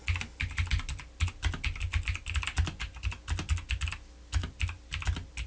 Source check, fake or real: real